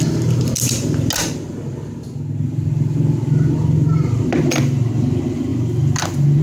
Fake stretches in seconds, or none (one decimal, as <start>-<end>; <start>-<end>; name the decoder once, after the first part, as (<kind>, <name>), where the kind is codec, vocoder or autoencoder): none